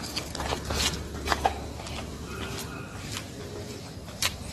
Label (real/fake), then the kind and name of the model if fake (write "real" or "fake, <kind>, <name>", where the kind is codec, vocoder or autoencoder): real